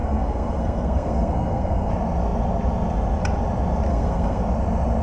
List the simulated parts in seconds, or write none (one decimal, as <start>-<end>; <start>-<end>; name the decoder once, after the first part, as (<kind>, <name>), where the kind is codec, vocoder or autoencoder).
0.0-1.9 (codec, SNAC); 3.9-4.4